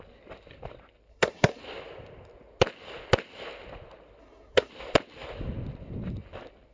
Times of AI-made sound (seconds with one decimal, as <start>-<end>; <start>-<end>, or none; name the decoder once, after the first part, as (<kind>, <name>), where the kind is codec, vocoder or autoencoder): 1.1-1.6 (codec, SNAC); 4.2-4.7